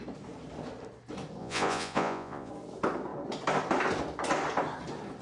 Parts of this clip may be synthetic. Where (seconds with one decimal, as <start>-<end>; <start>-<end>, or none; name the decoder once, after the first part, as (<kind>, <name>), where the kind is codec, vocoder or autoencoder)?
1.4-2.5 (vocoder, Vocos)